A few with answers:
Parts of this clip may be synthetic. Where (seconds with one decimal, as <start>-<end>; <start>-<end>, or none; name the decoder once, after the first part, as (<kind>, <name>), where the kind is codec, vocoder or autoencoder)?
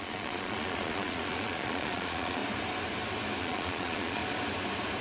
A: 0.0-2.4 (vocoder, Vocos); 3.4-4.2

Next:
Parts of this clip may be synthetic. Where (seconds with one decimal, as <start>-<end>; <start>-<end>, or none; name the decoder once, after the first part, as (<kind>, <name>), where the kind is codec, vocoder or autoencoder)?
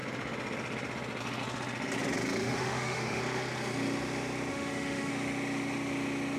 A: 2.4-3.2 (autoencoder, DAC-VAE); 4.5-5.1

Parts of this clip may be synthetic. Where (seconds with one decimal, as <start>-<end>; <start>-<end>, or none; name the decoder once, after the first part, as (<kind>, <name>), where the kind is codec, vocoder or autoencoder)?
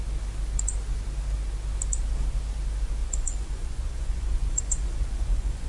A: 3.0-5.7 (vocoder, Vocos)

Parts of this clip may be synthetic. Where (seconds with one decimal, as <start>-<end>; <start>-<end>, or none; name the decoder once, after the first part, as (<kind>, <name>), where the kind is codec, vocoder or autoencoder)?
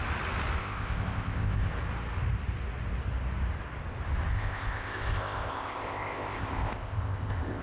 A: 0.6-1.7 (codec, ZipCodec); 4.3-7.6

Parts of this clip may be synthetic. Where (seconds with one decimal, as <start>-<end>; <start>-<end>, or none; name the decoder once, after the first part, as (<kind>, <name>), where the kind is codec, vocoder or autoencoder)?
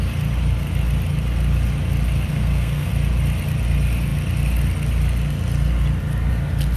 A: 2.3-2.9 (codec, SNAC)